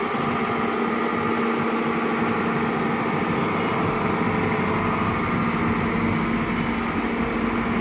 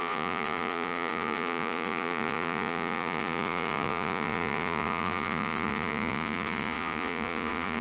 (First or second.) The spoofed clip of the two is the second